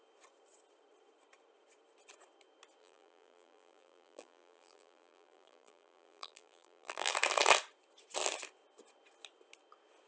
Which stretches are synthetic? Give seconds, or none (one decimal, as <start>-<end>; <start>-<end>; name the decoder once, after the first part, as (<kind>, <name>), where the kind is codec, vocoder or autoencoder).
2.8-7.1 (vocoder, BigVGAN v2)